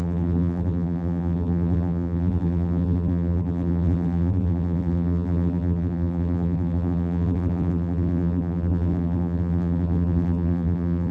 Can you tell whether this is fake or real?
fake